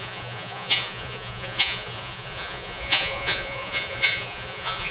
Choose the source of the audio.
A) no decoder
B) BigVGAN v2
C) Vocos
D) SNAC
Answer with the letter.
C